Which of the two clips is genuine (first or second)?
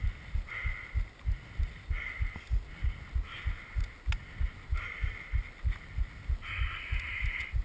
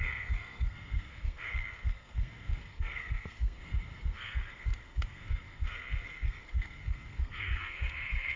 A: first